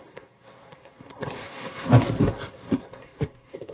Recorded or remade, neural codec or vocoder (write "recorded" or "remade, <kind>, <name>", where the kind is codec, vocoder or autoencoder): remade, codec, SNAC